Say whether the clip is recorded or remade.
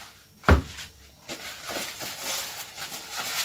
recorded